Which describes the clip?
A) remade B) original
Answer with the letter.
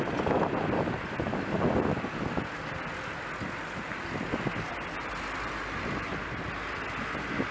B